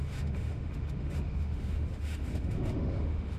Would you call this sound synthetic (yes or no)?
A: yes